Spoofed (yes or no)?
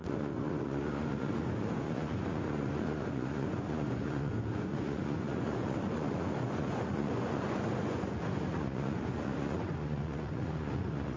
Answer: yes